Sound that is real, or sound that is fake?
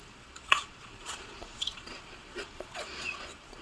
fake